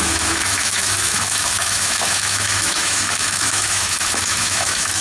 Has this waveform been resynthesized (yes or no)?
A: yes